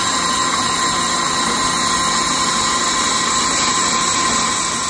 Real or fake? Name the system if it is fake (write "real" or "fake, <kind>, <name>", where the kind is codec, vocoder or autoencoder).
real